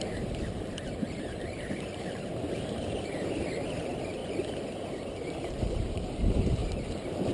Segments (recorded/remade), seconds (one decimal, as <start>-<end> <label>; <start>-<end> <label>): 0.0-4.2 remade; 4.2-5.2 recorded; 5.2-6.6 remade; 6.6-7.3 recorded